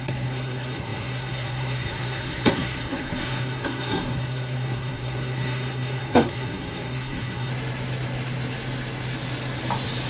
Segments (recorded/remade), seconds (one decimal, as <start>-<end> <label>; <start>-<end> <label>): 0.0-7.5 remade; 7.5-10.1 recorded